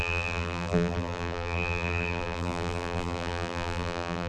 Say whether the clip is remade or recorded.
remade